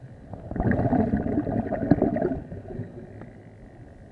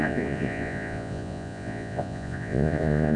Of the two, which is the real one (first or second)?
first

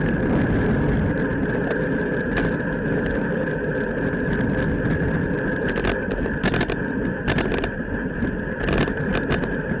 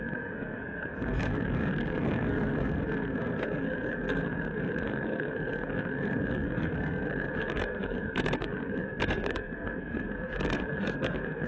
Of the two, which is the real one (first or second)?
first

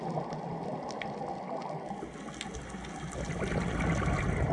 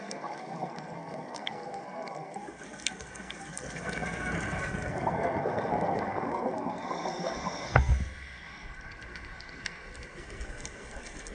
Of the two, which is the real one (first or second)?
first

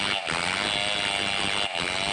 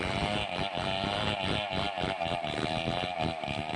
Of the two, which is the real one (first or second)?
first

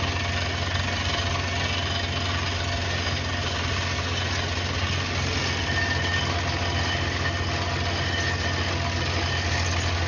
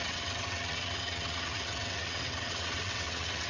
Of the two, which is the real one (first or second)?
first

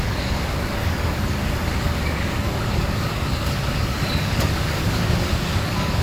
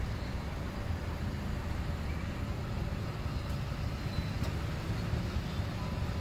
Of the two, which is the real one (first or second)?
second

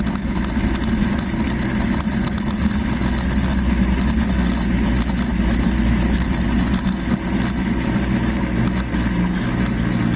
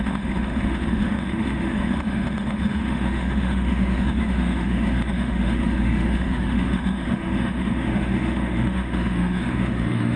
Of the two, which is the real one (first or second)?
first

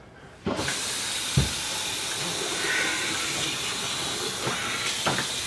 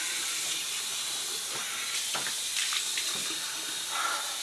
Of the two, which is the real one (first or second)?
first